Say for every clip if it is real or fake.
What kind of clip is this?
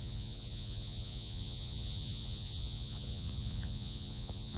fake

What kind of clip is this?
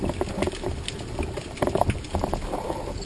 real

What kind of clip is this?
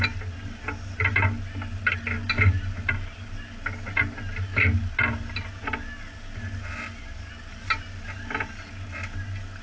real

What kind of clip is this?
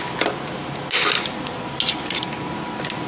real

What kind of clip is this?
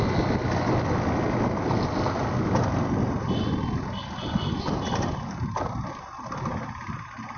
real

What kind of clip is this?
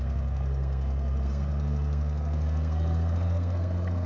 fake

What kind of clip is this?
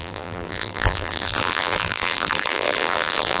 fake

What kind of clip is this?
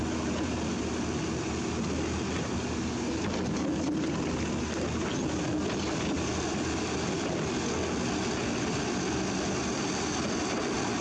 real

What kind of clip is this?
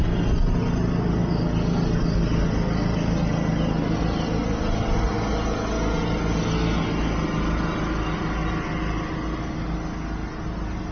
real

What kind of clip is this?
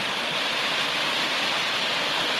real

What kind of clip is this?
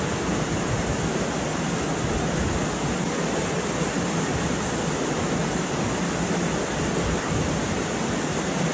real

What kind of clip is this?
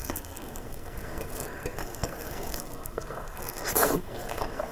fake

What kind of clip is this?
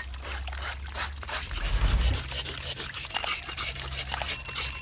real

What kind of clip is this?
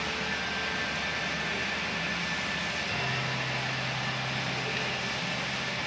real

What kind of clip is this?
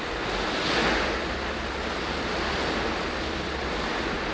real